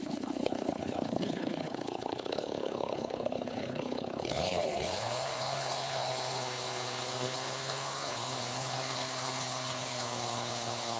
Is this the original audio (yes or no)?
no